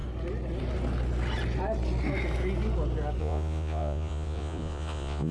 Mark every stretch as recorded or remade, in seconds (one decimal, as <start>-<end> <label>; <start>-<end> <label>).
0.0-3.2 recorded; 3.2-5.3 remade